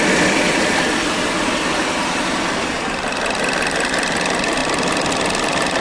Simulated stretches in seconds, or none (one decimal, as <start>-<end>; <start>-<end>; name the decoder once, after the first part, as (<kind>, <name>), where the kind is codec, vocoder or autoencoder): none